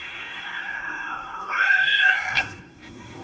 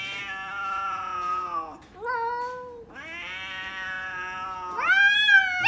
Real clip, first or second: second